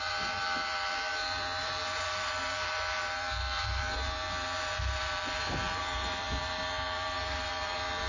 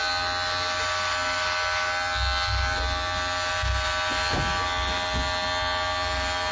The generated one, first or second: first